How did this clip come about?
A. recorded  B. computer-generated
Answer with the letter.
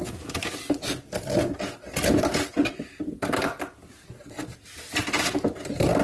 A